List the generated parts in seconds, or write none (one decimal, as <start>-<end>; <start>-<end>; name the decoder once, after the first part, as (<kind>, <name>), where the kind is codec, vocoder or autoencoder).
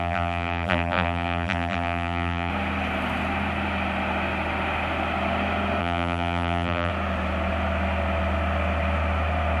0.0-2.5 (vocoder, BigVGAN v2); 5.8-6.9